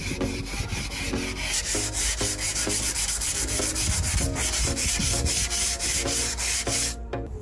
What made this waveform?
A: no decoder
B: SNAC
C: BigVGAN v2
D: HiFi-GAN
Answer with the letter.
C